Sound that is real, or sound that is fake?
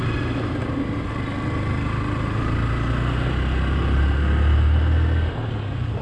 real